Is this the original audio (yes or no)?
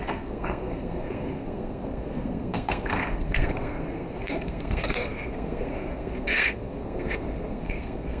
no